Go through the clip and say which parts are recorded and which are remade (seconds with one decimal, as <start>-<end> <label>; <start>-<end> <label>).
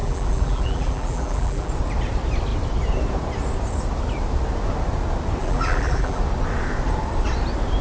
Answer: 0.0-1.7 remade; 1.7-5.4 recorded; 5.4-6.2 remade; 6.2-7.8 recorded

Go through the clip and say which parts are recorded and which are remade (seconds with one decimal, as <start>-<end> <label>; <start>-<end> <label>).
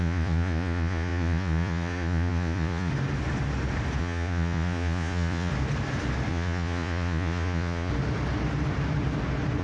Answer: 0.0-2.9 remade; 2.9-4.0 recorded; 4.0-5.5 remade; 5.5-6.3 recorded; 6.3-7.9 remade; 7.9-9.6 recorded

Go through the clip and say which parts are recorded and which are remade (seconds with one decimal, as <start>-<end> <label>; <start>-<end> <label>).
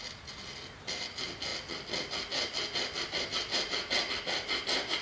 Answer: 0.0-5.0 recorded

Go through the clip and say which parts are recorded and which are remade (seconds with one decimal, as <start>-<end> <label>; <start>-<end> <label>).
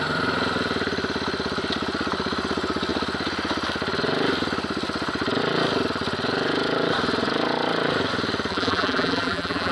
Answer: 0.0-8.5 recorded; 8.5-9.7 remade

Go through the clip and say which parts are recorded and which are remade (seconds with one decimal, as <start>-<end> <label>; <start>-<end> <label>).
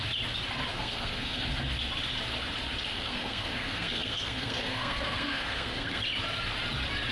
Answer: 0.0-0.7 recorded; 0.7-1.5 remade; 1.5-2.9 recorded; 2.9-6.0 remade; 6.0-7.1 recorded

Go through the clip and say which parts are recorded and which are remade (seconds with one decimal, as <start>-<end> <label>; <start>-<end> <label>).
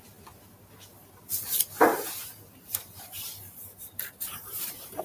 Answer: 0.0-1.9 recorded; 1.9-5.0 remade